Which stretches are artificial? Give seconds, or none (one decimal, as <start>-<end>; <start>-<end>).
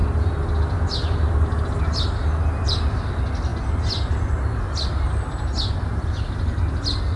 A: none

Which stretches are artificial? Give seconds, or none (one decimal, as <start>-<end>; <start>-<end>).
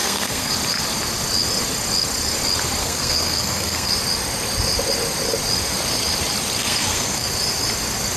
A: 0.0-0.5; 2.8-3.9; 6.6-7.3